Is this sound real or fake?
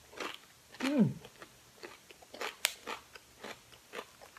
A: real